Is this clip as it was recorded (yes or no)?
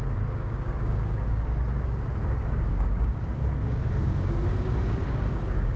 no